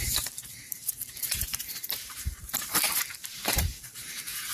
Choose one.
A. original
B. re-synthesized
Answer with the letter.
B